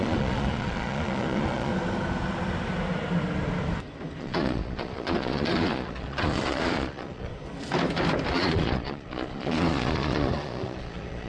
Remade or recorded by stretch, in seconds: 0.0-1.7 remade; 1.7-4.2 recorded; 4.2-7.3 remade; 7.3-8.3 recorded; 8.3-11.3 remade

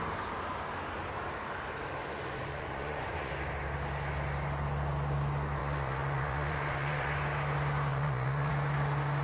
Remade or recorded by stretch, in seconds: 0.0-2.0 recorded; 2.0-3.3 remade; 3.3-5.6 recorded; 5.6-7.1 remade; 7.1-7.9 recorded; 7.9-8.5 remade; 8.5-9.2 recorded

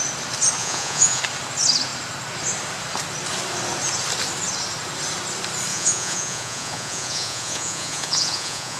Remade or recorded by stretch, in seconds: 0.0-0.6 recorded; 0.6-1.2 remade; 1.2-5.7 recorded; 5.7-8.8 remade

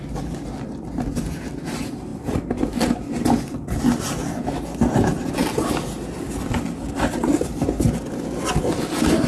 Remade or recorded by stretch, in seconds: 0.0-9.3 recorded

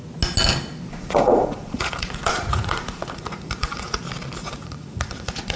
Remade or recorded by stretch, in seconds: 0.0-0.9 recorded; 0.9-4.0 remade; 4.0-4.4 recorded; 4.4-5.6 remade

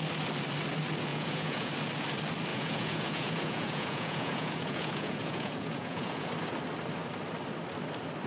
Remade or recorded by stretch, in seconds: 0.0-1.1 recorded; 1.1-1.7 remade; 1.7-2.5 recorded; 2.5-6.3 remade; 6.3-8.3 recorded

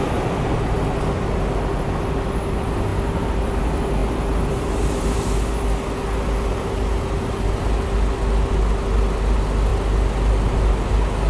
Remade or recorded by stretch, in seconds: 0.0-11.3 recorded

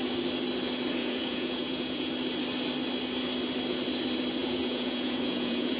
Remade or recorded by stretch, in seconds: 0.0-1.0 recorded; 1.0-2.1 remade; 2.1-4.4 recorded; 4.4-5.8 remade